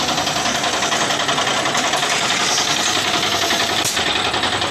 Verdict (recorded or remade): recorded